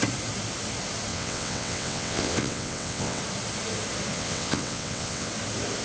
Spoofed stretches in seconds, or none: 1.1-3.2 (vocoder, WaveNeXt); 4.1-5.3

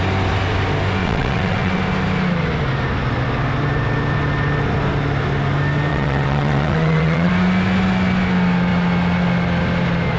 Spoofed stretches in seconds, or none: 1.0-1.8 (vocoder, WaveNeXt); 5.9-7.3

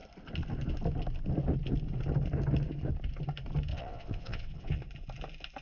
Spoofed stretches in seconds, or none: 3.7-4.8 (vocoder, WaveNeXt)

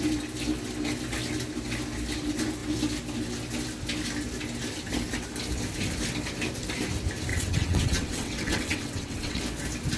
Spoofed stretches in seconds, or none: 7.3-9.4 (vocoder, WaveNeXt)

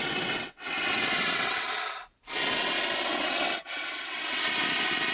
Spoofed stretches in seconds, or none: 0.0-1.7 (vocoder, WaveNeXt); 3.1-4.5

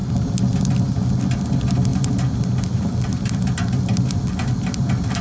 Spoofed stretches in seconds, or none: none

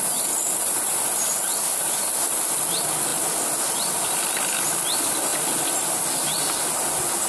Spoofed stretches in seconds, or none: none

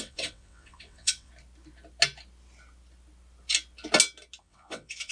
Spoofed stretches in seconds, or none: 0.0-1.3 (vocoder, WaveNeXt); 4.4-5.1